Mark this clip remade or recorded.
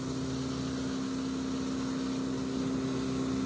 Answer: recorded